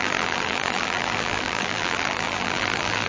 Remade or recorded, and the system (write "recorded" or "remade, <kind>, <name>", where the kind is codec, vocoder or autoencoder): remade, vocoder, BigVGAN v2